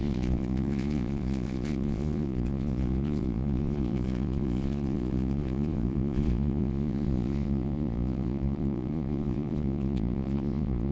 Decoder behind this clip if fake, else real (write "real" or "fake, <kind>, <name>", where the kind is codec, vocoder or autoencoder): fake, vocoder, Vocos